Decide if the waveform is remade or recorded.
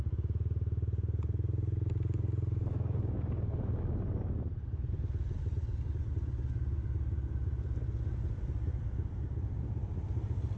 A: recorded